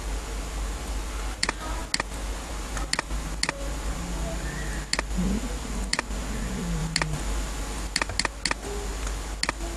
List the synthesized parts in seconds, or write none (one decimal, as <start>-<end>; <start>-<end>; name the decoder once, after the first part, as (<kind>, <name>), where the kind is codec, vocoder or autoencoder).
none